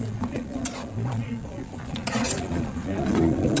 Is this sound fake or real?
fake